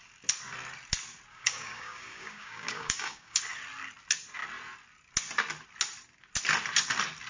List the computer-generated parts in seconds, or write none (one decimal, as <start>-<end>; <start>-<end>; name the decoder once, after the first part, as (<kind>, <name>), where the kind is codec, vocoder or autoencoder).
1.3-3.4 (codec, DAC)